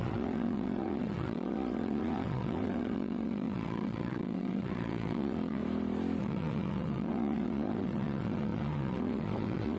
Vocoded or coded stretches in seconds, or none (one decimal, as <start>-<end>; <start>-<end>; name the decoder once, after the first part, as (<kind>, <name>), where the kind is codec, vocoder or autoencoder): 0.0-5.6 (vocoder, WaveNeXt); 6.2-9.8